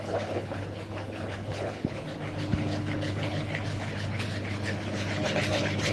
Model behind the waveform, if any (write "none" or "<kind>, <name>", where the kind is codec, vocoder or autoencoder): codec, HILCodec